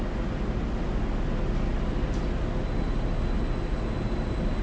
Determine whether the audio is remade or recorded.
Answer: recorded